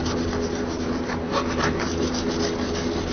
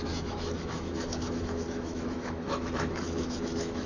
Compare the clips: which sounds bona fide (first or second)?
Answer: first